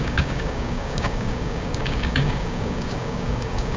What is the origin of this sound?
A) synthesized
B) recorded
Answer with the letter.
A